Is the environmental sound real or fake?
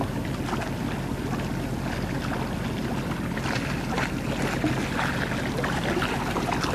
real